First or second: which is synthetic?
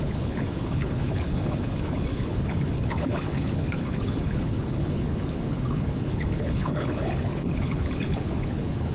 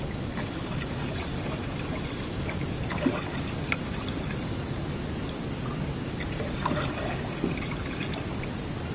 first